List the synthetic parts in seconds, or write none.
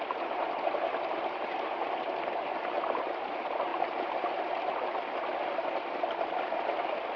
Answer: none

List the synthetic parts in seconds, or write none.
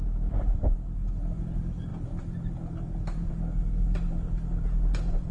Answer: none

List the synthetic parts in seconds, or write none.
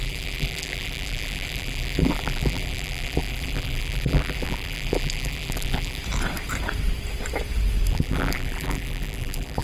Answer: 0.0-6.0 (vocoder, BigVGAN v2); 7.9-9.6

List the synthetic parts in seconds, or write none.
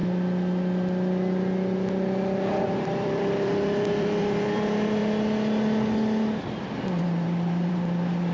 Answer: 2.8-5.0 (vocoder, BigVGAN v2); 7.0-8.3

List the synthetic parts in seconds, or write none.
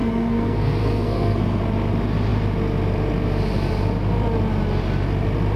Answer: 0.0-1.6 (codec, SNAC)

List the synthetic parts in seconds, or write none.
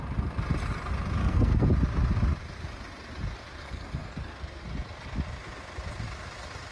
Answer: 1.2-1.7 (codec, SNAC); 3.6-4.6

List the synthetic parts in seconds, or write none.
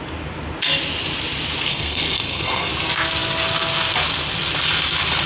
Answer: 1.7-2.7 (codec, SNAC)